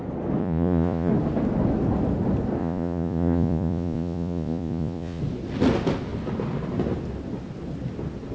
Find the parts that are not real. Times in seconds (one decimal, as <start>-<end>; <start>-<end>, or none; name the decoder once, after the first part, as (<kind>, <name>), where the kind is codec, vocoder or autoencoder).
0.4-1.1 (vocoder, Vocos); 2.6-5.2